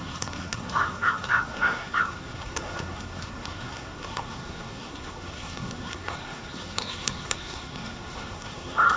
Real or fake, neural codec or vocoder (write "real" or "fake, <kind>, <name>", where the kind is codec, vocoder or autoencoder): fake, codec, SNAC